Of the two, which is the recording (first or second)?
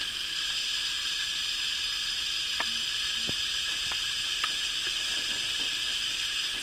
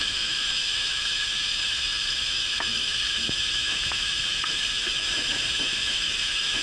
first